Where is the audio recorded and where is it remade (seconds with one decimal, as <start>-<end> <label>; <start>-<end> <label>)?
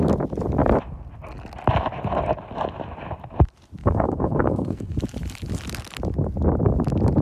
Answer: 0.0-3.8 recorded; 3.8-5.0 remade; 5.0-7.2 recorded